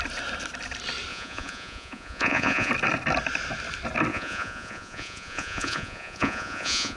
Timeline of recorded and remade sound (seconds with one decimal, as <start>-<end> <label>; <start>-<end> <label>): 0.0-1.1 recorded; 1.1-2.7 remade; 2.7-4.1 recorded; 4.1-7.0 remade